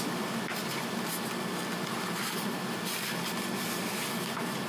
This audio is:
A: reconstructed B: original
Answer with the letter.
B